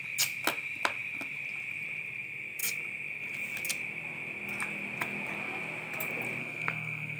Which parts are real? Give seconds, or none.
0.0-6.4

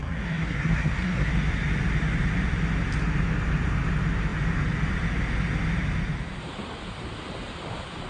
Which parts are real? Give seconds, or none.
1.3-8.1

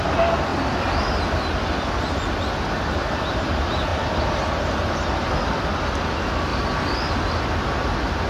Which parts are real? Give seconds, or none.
0.0-8.3